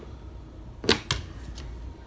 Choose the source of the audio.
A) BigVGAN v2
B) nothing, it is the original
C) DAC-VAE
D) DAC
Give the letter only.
B